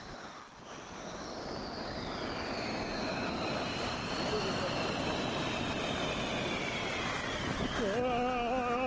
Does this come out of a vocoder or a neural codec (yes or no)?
no